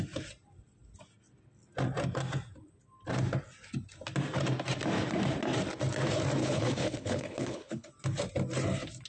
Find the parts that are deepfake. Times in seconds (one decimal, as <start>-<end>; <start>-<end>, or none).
6.4-7.9